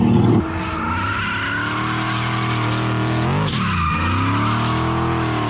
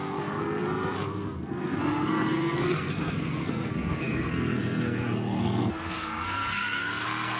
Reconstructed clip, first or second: second